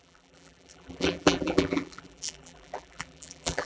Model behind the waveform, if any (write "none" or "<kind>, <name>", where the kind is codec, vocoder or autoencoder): vocoder, BigVGAN v2